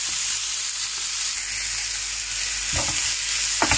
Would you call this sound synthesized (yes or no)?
no